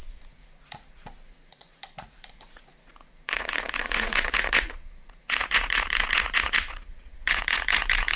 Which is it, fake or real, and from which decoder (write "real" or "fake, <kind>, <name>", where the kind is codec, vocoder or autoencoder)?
fake, vocoder, Vocos